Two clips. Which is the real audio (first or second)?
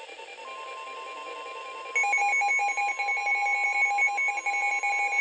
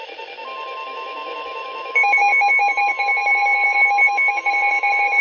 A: first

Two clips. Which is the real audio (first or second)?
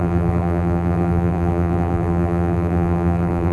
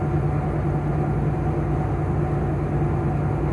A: second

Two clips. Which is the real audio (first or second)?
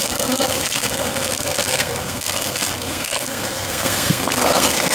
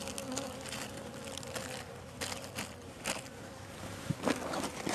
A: second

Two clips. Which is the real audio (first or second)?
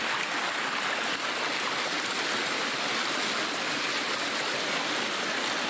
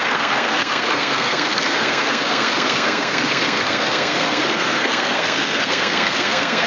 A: first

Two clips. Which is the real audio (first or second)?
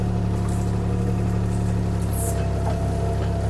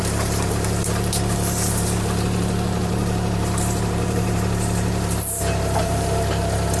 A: first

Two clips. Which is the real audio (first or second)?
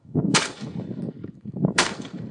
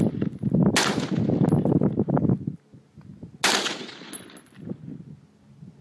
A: second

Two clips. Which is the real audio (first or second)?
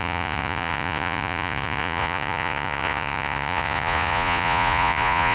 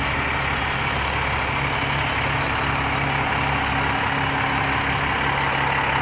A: second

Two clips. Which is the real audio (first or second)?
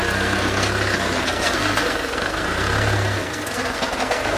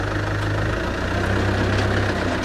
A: second